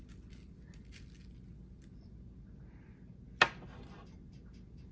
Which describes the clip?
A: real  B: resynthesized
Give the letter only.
A